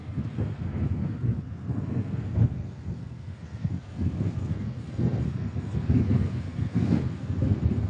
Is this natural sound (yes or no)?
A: no